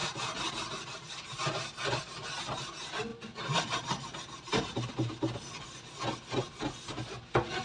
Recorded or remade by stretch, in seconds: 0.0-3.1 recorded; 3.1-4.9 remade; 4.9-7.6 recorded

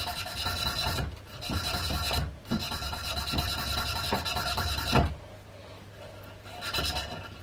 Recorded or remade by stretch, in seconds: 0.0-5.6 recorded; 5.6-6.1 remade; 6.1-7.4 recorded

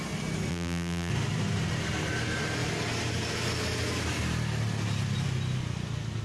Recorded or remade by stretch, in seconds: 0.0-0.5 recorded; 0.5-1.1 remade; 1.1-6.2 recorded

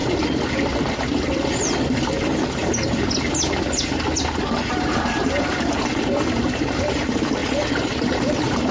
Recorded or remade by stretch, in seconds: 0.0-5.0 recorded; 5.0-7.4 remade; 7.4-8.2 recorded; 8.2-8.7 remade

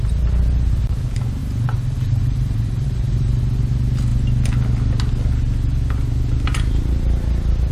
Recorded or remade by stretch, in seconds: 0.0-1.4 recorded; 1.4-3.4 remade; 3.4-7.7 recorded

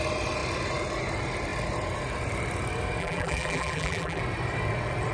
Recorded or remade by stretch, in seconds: 0.0-3.0 recorded; 3.0-4.2 remade; 4.2-5.1 recorded

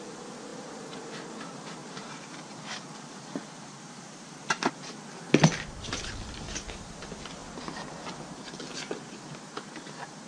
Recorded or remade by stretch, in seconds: 0.0-0.5 recorded; 0.5-1.0 remade; 1.0-1.8 recorded; 1.8-4.7 remade; 4.7-10.3 recorded